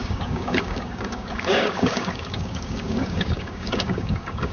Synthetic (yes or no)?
yes